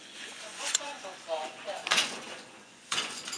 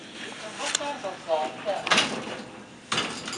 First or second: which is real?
second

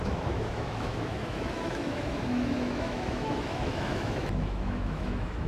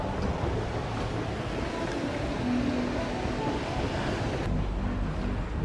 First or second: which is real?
second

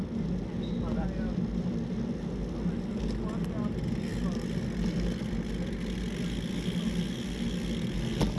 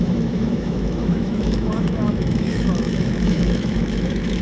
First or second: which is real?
first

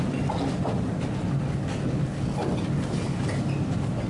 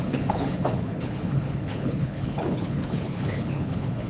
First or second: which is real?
first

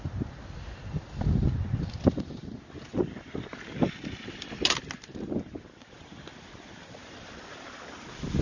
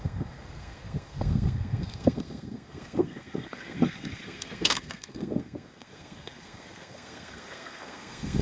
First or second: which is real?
first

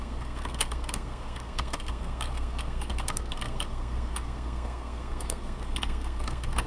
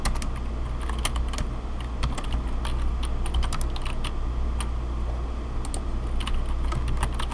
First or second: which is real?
second